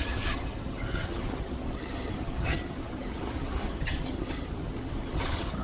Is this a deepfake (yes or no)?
yes